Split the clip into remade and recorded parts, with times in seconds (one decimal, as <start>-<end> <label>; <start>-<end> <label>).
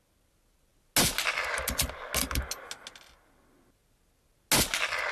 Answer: 0.0-5.1 recorded